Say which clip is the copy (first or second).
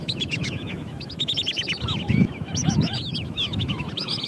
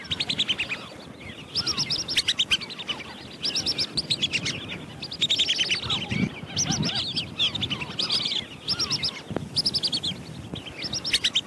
first